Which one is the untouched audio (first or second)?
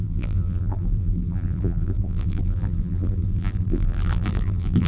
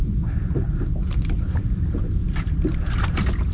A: second